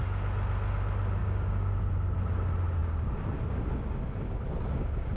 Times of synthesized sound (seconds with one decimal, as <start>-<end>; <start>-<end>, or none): 1.2-1.8

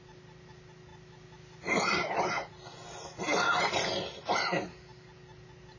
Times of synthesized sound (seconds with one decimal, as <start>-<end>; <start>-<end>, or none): none

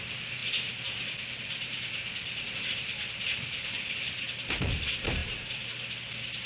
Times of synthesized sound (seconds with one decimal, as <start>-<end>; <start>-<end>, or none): 5.2-5.7

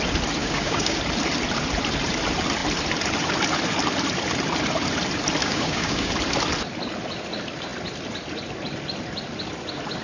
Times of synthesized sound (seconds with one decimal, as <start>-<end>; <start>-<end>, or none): 0.4-1.0; 5.4-6.1

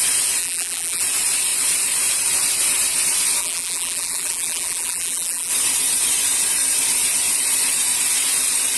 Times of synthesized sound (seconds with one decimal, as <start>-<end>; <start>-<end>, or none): 0.4-1.0; 3.4-5.5

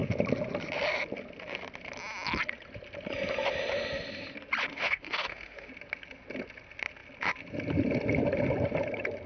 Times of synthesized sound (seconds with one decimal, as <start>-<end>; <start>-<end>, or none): 4.7-5.7